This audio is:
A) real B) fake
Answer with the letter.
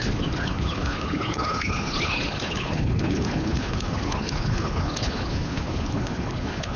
B